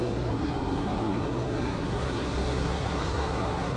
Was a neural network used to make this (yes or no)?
yes